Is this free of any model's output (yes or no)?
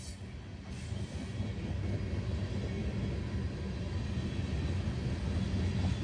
yes